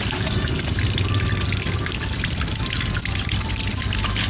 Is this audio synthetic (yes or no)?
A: yes